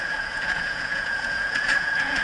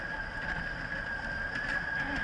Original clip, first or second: second